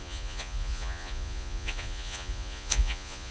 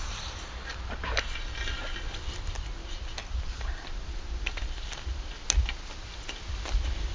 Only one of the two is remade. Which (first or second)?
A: first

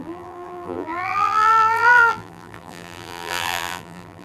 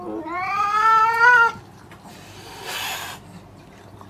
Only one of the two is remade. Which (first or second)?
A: first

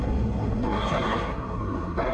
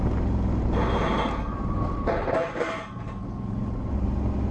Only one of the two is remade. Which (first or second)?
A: first